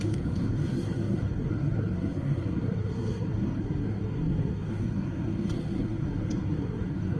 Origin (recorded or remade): remade